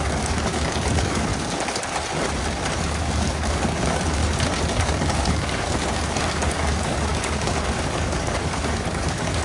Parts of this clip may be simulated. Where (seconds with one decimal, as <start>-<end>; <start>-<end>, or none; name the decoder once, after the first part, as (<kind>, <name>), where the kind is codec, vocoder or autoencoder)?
0.0-1.3 (codec, DAC); 2.8-4.2; 4.8-9.4